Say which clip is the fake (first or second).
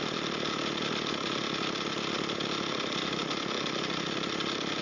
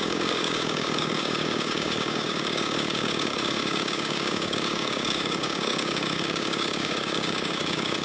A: second